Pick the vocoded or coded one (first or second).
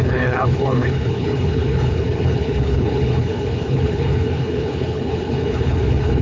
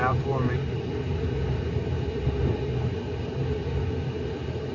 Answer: first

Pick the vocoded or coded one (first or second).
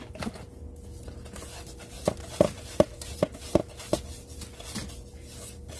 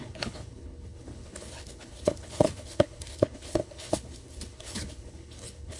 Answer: second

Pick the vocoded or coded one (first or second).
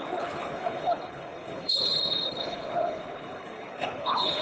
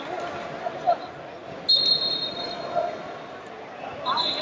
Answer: first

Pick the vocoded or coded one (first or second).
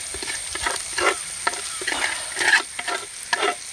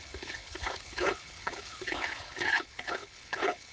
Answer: second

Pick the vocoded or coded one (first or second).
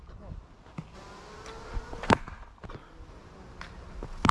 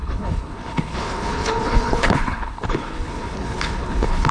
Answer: second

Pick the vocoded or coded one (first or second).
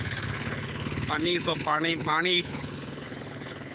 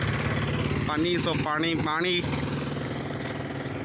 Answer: first